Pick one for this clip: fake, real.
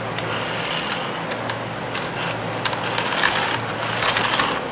real